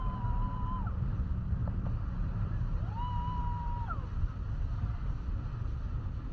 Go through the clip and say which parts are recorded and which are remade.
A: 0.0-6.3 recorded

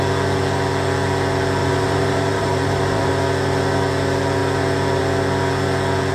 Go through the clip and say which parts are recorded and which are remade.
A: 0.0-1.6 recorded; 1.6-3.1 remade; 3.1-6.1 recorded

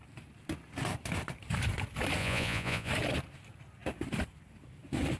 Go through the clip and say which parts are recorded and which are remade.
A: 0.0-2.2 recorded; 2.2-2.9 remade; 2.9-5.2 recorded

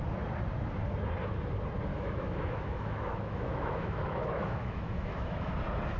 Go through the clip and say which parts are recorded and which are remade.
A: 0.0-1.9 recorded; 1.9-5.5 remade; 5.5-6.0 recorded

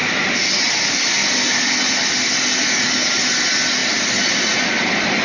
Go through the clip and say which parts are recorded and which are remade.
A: 0.0-0.5 remade; 0.5-5.2 recorded

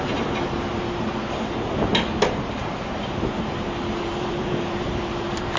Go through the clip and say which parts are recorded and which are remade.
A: 0.0-1.9 remade; 1.9-2.6 recorded; 2.6-5.6 remade

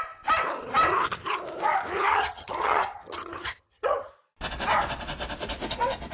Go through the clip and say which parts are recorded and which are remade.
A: 0.0-2.1 recorded; 2.1-4.1 remade; 4.1-6.1 recorded

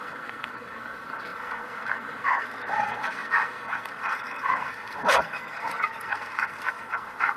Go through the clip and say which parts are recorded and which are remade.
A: 0.0-7.4 remade